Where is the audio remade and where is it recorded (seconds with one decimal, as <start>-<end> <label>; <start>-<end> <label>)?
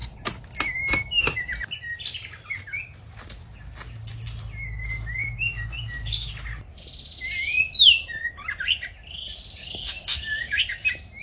0.0-5.2 recorded; 5.2-6.3 remade; 6.3-9.6 recorded; 9.6-10.6 remade; 10.6-11.2 recorded